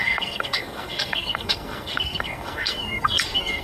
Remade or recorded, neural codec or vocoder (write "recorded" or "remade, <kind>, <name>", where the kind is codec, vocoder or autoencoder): remade, codec, SNAC